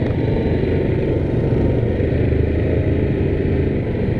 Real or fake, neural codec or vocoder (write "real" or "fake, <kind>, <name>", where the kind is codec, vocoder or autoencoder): real